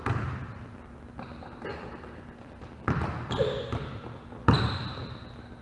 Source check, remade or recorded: recorded